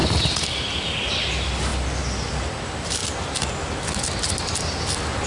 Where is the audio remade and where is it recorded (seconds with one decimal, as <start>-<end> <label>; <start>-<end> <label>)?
0.0-0.9 remade; 0.9-5.3 recorded